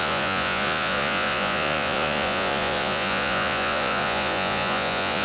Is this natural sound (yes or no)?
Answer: no